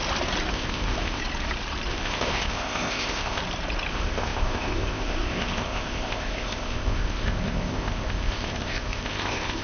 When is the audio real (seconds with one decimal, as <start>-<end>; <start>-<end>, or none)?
0.0-0.5; 1.2-1.9; 3.4-3.9